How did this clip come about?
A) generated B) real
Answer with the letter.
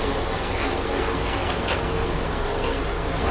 A